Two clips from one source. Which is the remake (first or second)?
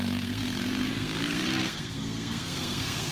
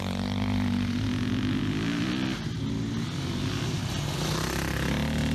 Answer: first